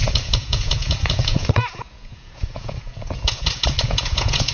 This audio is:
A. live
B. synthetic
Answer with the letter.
B